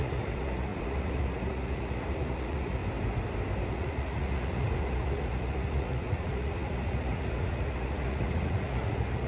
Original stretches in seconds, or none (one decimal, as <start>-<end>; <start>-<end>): 2.8-3.7